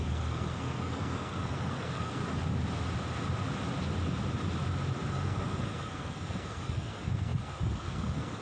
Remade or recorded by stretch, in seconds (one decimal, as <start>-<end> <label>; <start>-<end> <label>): 0.0-2.2 remade; 2.2-5.1 recorded; 5.1-8.4 remade